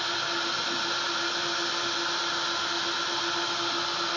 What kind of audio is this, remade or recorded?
recorded